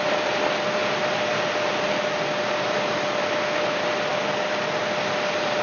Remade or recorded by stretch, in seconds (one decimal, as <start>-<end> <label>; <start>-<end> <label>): 0.0-5.6 recorded